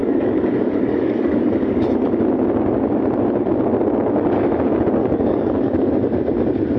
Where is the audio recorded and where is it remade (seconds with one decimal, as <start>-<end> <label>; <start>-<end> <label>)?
0.0-1.5 remade; 1.5-5.0 recorded; 5.0-5.9 remade; 5.9-6.8 recorded